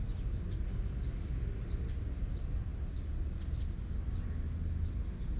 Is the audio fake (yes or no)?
no